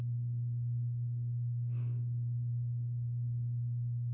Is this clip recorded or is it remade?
remade